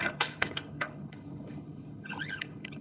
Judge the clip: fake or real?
fake